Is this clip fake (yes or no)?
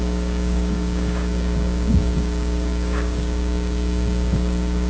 yes